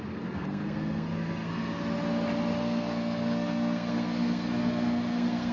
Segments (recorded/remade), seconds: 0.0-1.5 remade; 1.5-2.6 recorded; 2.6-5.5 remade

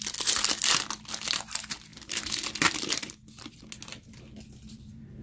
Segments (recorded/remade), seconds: 0.0-5.2 recorded

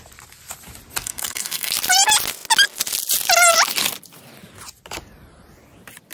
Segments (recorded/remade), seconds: 0.0-1.0 recorded; 1.0-1.7 remade; 1.7-6.1 recorded

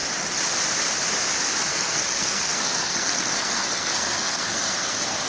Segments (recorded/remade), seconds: 0.0-1.7 recorded; 1.7-5.3 remade

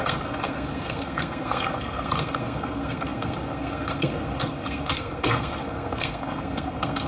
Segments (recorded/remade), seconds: 0.0-7.1 remade

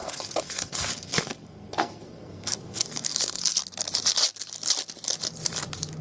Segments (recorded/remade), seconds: 0.0-3.6 remade; 3.6-6.0 recorded

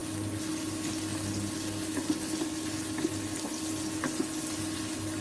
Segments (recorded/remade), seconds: 0.0-5.2 recorded